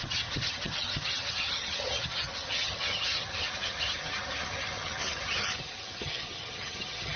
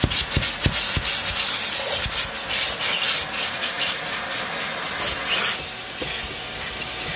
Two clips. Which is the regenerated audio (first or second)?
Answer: first